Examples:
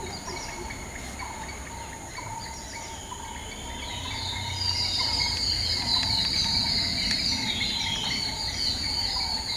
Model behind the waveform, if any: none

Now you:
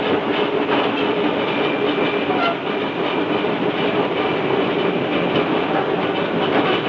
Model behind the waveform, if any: none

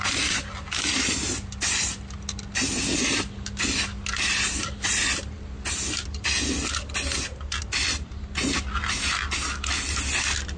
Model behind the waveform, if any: none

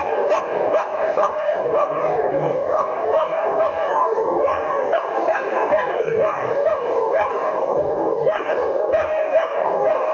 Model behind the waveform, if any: codec, DAC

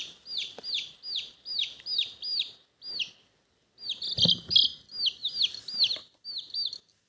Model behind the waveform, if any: none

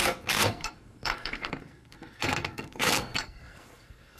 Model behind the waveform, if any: codec, SNAC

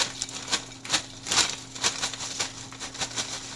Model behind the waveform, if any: none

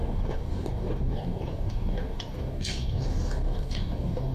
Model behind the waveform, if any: codec, DAC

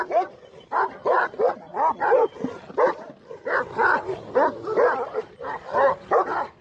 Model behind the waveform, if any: none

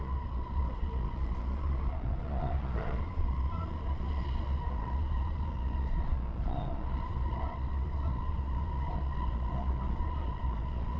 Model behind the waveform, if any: vocoder, Vocos